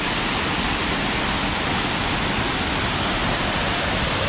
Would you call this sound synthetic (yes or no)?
no